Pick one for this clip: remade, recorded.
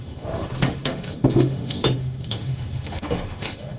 remade